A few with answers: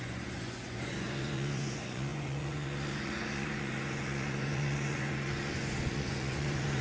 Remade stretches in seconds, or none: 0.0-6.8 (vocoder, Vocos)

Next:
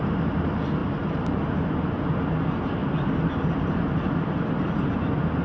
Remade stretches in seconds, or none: 0.8-1.3 (vocoder, BigVGAN v2)